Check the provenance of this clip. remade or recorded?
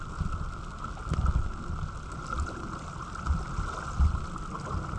recorded